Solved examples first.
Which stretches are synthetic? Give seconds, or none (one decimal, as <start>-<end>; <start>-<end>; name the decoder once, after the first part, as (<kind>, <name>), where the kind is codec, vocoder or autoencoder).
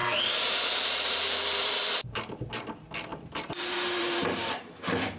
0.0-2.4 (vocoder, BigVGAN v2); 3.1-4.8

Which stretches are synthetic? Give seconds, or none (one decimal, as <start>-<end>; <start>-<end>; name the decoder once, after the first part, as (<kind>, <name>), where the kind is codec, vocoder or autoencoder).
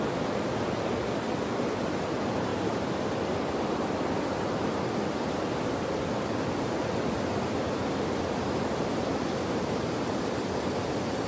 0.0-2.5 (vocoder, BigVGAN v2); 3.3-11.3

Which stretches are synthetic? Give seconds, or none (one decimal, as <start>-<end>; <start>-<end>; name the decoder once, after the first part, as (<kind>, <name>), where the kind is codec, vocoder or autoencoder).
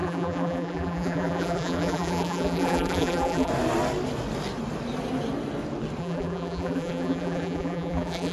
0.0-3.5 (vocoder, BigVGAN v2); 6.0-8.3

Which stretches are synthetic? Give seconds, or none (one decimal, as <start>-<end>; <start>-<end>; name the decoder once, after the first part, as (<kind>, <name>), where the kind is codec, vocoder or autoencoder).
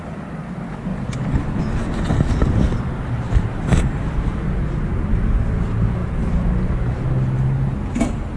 0.9-1.6 (vocoder, BigVGAN v2); 6.0-6.8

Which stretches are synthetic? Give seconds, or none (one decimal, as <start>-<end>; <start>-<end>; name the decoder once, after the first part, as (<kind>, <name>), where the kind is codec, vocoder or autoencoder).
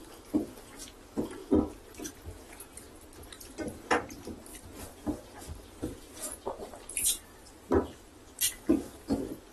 4.5-8.5 (vocoder, BigVGAN v2)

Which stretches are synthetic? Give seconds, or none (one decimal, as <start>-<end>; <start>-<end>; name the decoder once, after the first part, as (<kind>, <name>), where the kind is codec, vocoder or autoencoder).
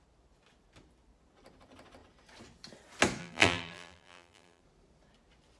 3.2-4.6 (vocoder, BigVGAN v2)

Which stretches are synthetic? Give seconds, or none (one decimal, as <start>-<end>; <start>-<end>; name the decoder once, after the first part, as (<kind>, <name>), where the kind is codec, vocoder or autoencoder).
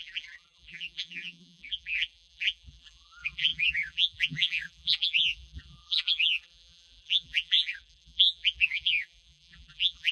0.0-10.1 (vocoder, BigVGAN v2)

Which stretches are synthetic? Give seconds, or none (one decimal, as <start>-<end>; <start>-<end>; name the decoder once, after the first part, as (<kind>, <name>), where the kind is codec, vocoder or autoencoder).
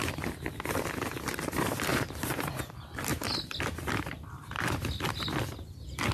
1.9-2.6 (vocoder, BigVGAN v2)